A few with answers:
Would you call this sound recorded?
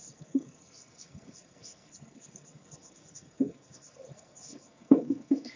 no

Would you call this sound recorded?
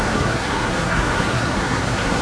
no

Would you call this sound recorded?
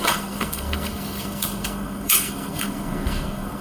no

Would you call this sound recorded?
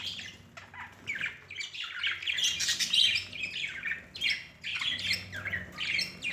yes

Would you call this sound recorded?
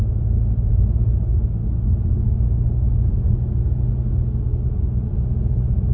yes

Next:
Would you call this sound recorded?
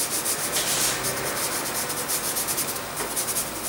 yes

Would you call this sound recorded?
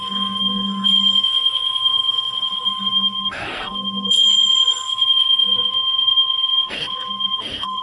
no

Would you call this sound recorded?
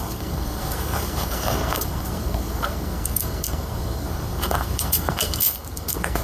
no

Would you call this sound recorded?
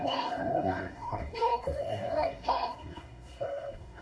no